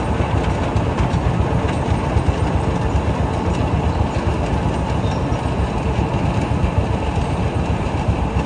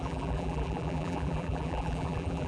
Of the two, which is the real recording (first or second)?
first